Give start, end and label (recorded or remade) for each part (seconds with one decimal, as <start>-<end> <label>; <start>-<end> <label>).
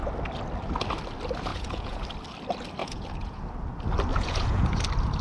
0.0-1.5 recorded; 1.5-2.0 remade; 2.0-2.8 recorded; 2.8-3.4 remade; 3.4-4.1 recorded; 4.1-4.8 remade; 4.8-5.2 recorded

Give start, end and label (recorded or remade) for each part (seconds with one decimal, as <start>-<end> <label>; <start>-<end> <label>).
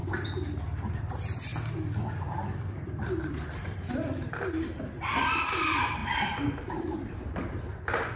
0.0-1.5 remade; 1.5-2.2 recorded; 2.2-8.2 remade